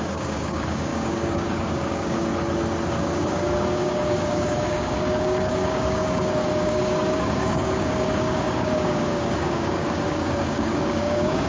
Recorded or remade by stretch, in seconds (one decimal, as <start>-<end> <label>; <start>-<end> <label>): 0.0-2.3 remade; 2.3-2.9 recorded; 2.9-11.5 remade